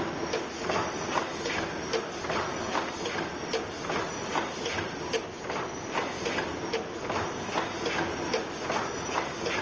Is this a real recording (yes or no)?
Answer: yes